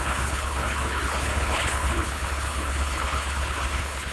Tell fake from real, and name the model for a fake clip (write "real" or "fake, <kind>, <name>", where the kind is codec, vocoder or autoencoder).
fake, codec, HILCodec